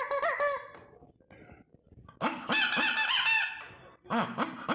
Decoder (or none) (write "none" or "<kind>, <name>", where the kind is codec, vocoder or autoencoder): none